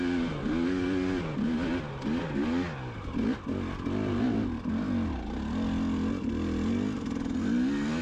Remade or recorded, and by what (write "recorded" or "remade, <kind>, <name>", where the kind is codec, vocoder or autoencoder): recorded